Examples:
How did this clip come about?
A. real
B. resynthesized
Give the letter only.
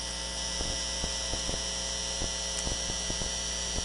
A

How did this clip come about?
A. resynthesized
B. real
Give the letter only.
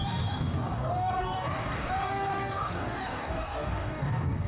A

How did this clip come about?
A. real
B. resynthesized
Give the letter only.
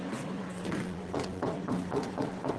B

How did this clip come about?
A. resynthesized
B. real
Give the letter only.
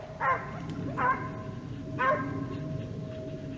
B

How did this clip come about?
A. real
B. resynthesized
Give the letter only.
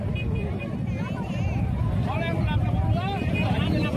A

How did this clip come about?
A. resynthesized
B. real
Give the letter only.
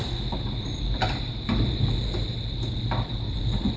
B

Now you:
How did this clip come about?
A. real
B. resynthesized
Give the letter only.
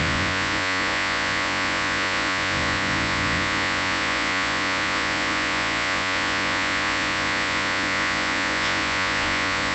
B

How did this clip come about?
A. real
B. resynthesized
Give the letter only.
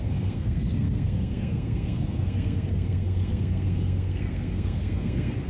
B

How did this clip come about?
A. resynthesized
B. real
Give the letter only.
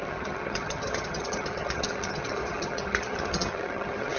A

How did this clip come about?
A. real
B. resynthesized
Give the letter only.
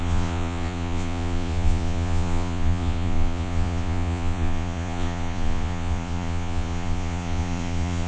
B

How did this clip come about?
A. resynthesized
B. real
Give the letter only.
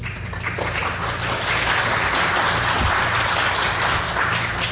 B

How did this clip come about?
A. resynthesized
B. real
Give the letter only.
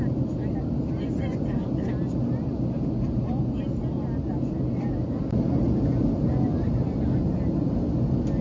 B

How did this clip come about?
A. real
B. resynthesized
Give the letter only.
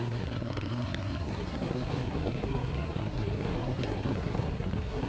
B